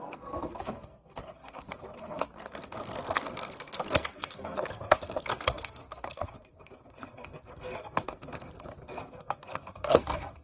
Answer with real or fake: fake